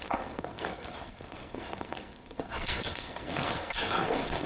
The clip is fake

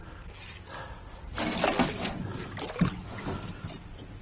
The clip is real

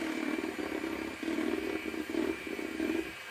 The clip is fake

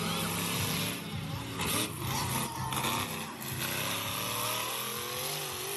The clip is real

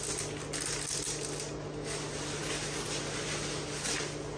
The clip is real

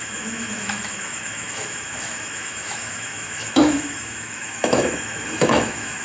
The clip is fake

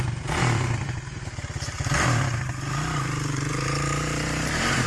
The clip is fake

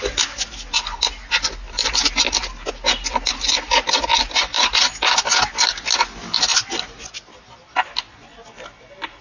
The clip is real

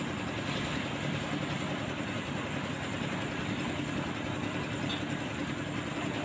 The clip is real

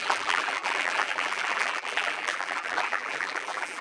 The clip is fake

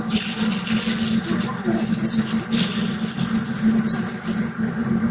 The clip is real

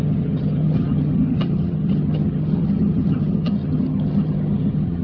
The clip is fake